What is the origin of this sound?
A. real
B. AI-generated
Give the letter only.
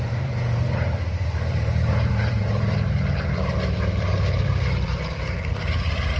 B